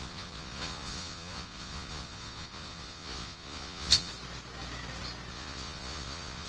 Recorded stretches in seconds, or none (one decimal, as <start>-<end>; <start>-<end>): 4.1-5.3